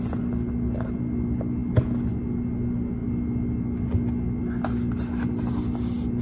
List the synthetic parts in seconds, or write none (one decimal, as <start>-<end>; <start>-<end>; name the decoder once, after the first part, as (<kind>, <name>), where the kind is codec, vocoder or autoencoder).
none